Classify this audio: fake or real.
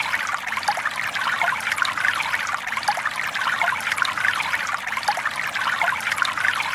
fake